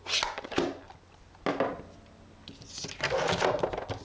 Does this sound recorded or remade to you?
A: recorded